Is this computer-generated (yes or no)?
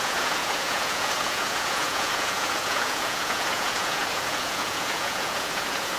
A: yes